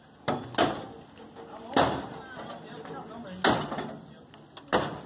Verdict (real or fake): real